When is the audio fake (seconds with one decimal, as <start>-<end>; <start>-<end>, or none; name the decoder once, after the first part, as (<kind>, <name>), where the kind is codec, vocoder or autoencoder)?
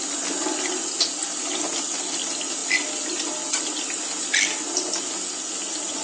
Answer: none